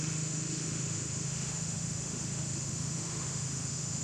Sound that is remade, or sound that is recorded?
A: remade